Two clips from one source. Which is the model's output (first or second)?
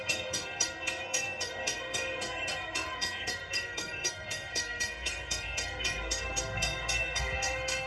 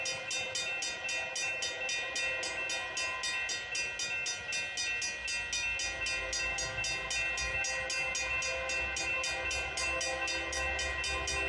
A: first